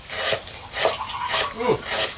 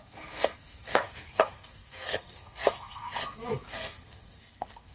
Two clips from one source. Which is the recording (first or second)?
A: first